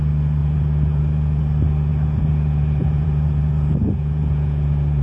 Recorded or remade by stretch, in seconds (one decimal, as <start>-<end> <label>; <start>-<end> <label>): 0.0-0.4 recorded; 0.4-1.4 remade; 1.4-1.9 recorded; 1.9-5.0 remade